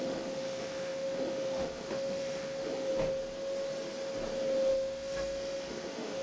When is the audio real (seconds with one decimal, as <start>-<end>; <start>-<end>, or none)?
2.9-4.7